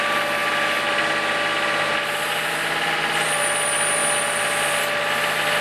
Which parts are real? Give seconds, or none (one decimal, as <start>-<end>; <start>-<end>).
0.0-5.6